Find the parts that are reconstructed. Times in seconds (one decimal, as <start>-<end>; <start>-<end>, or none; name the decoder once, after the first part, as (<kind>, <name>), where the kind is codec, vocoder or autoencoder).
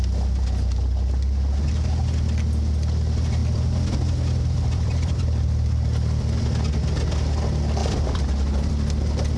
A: 3.4-6.4 (vocoder, BigVGAN v2); 7.8-8.7